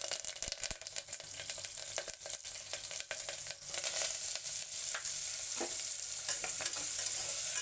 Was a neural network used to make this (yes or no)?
no